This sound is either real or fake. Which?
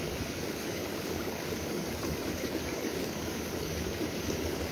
fake